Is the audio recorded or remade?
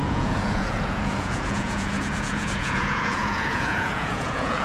remade